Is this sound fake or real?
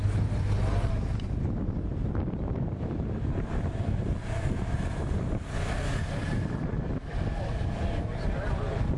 fake